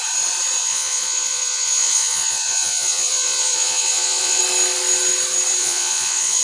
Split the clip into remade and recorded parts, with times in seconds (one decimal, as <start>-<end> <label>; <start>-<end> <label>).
0.0-0.6 recorded; 0.6-4.4 remade; 4.4-5.6 recorded; 5.6-6.4 remade